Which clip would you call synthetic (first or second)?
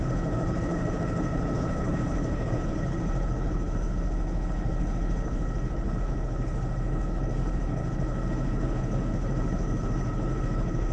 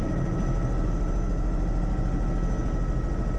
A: first